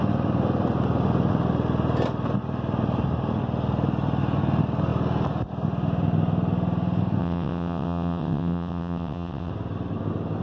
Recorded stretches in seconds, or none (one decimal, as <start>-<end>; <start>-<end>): 0.0-7.2; 9.5-10.4